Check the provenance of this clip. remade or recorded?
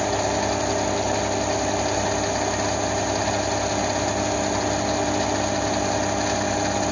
recorded